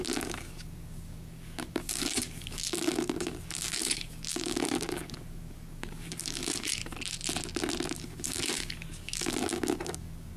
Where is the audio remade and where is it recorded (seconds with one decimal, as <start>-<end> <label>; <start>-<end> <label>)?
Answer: 0.0-6.8 remade; 6.8-8.0 recorded; 8.0-10.4 remade